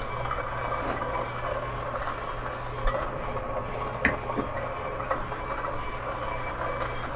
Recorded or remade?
recorded